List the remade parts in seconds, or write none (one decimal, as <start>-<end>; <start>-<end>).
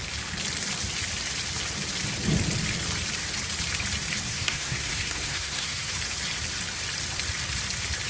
4.3-5.9